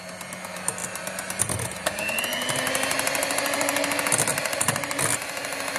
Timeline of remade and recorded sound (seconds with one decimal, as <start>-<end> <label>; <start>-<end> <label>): 0.0-0.8 recorded; 0.8-2.2 remade; 2.2-4.3 recorded; 4.3-5.0 remade; 5.0-5.8 recorded